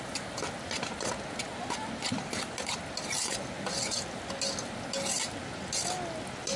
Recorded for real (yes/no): yes